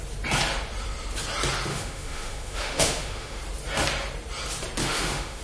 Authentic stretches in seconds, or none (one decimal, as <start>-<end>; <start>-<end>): 0.0-1.7; 3.4-4.8